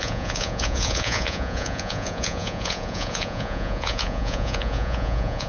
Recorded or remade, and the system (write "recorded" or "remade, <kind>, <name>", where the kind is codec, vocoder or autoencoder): remade, vocoder, Vocos